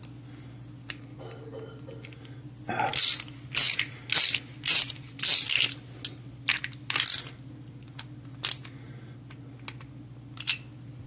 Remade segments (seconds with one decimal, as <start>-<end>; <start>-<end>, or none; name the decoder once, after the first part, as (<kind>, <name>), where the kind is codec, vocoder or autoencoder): none